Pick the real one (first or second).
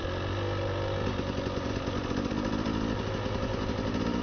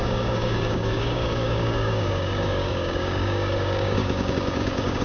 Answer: first